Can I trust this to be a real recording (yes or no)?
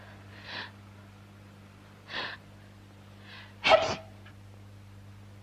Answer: yes